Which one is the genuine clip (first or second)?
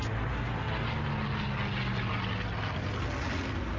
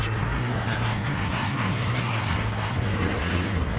first